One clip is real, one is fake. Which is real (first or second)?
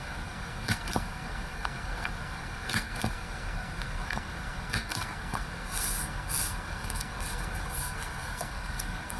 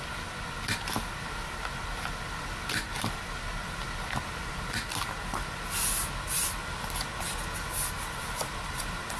second